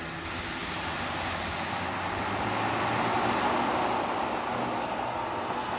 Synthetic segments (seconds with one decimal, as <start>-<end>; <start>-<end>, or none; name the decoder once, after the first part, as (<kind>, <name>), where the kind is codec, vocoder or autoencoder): 4.8-5.8 (codec, SNAC)